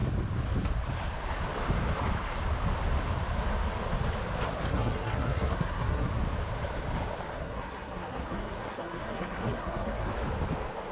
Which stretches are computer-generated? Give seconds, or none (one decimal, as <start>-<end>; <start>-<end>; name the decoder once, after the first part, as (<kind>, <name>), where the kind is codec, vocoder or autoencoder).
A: 4.7-6.1 (codec, SNAC); 7.3-10.1